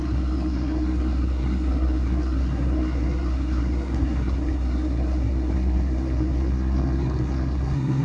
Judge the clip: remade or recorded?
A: remade